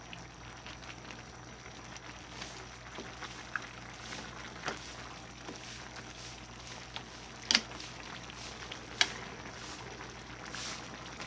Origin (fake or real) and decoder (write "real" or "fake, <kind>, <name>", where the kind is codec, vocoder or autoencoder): real